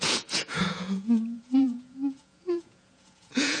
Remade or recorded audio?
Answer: remade